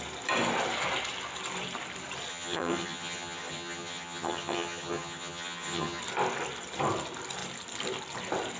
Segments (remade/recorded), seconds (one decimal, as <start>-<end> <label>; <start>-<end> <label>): 0.0-2.3 recorded; 2.3-6.0 remade; 6.0-8.6 recorded